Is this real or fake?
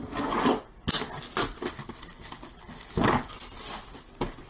real